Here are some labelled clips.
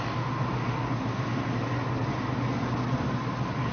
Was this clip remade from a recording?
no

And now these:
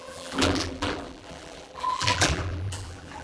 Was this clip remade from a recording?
yes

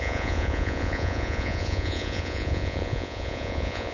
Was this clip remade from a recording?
yes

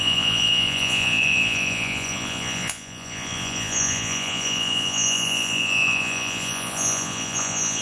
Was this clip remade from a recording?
yes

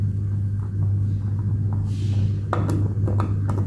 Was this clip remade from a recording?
no